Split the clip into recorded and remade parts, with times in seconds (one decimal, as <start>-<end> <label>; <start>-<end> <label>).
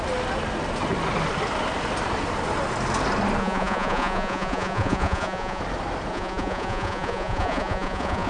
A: 0.0-3.4 recorded; 3.4-5.6 remade; 5.6-6.1 recorded; 6.1-8.3 remade